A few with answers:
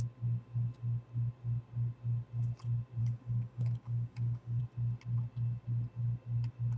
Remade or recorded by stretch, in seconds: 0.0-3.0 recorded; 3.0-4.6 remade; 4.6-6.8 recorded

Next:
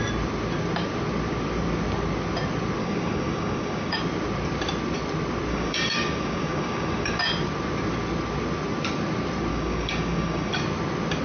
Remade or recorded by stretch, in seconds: 0.0-2.8 recorded; 2.8-4.0 remade; 4.0-5.5 recorded; 5.5-7.2 remade; 7.2-9.5 recorded; 9.5-10.5 remade; 10.5-11.2 recorded

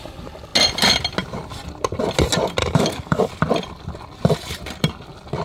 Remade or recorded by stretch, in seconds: 0.0-2.6 recorded; 2.6-3.3 remade; 3.3-5.4 recorded

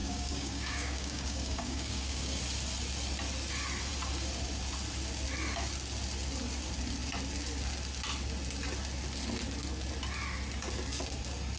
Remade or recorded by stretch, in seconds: 0.0-2.4 remade; 2.4-11.6 recorded

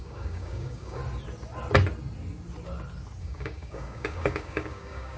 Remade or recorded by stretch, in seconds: 0.0-1.0 remade; 1.0-3.2 recorded; 3.2-5.2 remade